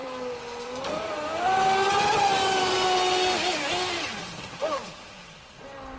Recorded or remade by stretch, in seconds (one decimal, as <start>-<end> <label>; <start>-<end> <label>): 0.0-6.0 recorded